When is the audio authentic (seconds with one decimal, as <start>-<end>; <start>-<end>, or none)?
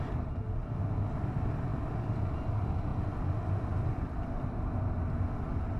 0.0-5.8